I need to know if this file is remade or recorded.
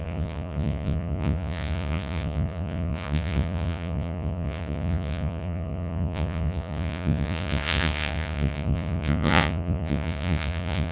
remade